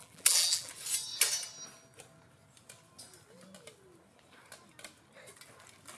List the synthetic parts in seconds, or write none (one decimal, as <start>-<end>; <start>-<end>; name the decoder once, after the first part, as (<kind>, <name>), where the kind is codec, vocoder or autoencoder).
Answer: 0.0-0.7 (vocoder, BigVGAN v2)